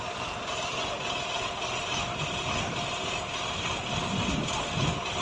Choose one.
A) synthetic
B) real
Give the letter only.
B